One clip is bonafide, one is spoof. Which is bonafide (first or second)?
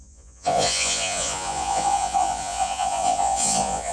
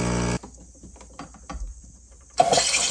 second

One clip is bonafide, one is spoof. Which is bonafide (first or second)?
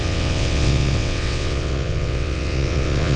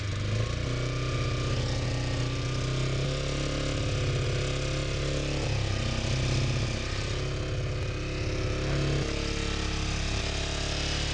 second